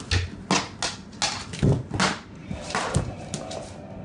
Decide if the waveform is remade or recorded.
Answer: recorded